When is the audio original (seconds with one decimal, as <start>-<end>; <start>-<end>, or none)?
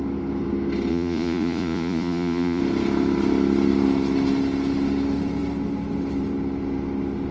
0.0-0.9; 2.6-7.3